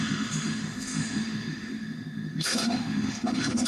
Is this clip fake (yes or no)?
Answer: yes